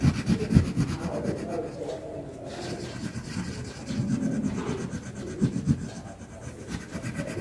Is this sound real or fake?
real